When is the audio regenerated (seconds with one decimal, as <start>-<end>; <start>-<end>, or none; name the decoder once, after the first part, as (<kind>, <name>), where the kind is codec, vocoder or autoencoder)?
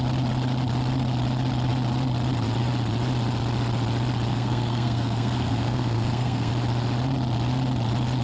4.3-6.5 (codec, SNAC)